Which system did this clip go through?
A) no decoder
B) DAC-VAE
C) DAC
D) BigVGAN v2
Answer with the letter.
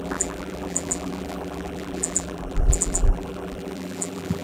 D